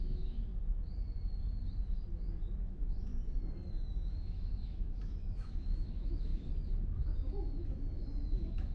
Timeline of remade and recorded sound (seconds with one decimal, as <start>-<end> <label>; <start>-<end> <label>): 0.0-0.5 remade; 0.5-2.6 recorded; 2.6-3.1 remade; 3.1-3.7 recorded; 3.7-6.3 remade; 6.3-6.9 recorded; 6.9-8.7 remade